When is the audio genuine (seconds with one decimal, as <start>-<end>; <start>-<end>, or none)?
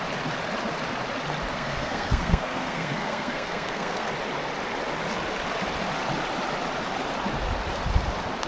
0.0-1.5; 4.1-8.5